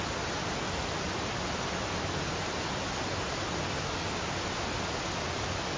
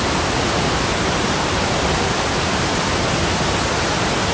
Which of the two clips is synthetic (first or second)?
second